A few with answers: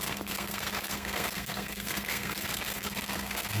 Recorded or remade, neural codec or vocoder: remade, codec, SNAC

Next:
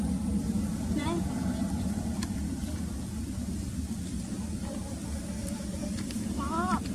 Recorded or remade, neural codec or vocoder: recorded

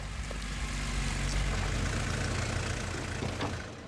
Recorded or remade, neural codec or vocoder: recorded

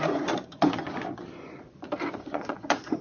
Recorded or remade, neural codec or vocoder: remade, vocoder, Vocos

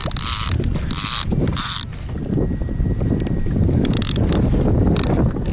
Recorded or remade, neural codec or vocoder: recorded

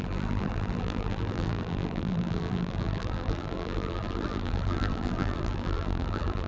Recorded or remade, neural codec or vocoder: remade, vocoder, BigVGAN v2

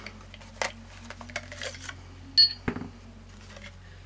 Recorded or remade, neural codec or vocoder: recorded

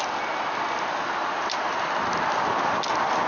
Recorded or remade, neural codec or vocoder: recorded